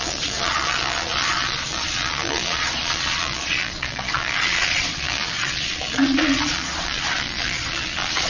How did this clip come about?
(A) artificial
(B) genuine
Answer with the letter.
A